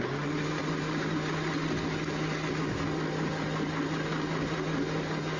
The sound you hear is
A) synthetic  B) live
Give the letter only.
B